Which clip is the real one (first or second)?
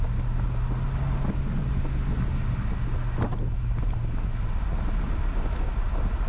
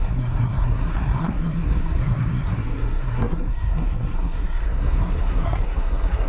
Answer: first